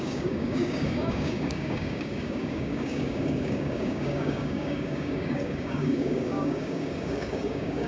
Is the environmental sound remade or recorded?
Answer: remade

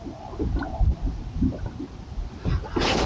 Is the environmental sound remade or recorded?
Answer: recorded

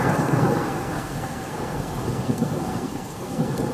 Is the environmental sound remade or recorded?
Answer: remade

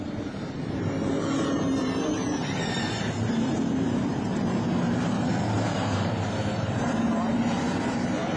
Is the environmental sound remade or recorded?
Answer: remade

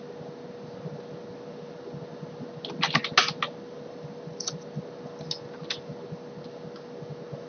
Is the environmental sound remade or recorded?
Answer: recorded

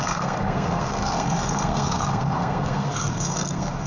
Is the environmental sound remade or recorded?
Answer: remade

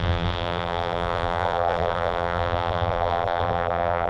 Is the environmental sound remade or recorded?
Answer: remade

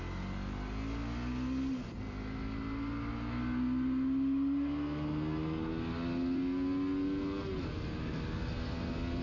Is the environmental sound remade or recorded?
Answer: recorded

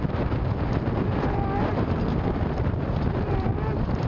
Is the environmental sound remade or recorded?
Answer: recorded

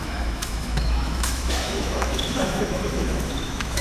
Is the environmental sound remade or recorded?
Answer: remade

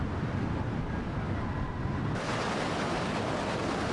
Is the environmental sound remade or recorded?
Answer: recorded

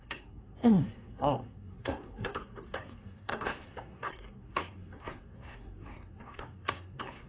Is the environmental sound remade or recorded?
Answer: remade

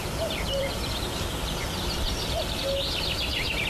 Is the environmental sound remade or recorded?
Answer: remade